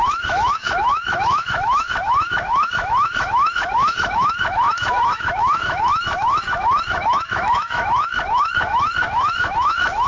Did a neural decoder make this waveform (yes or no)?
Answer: yes